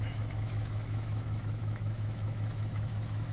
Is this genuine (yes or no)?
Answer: no